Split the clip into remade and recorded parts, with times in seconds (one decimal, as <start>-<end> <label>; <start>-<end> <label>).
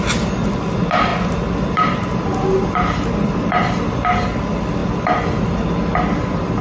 0.0-6.6 recorded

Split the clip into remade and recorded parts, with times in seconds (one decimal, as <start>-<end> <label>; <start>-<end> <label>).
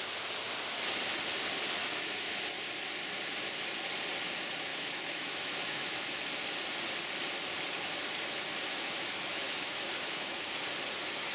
0.0-1.8 recorded; 1.8-2.4 remade; 2.4-4.7 recorded; 4.7-6.2 remade; 6.2-8.7 recorded; 8.7-10.5 remade; 10.5-11.3 recorded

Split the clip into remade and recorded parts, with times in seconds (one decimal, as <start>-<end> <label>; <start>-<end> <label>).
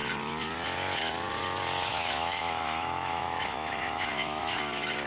0.0-1.9 recorded; 1.9-4.6 remade; 4.6-5.1 recorded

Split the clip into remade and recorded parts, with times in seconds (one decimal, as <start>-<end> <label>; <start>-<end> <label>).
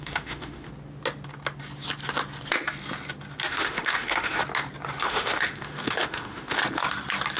0.0-0.7 remade; 0.7-3.5 recorded; 3.5-4.4 remade; 4.4-5.0 recorded; 5.0-6.6 remade; 6.6-7.4 recorded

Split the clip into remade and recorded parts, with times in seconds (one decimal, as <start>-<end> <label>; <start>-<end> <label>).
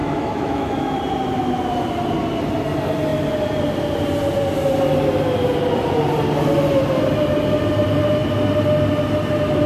0.0-1.0 remade; 1.0-9.7 recorded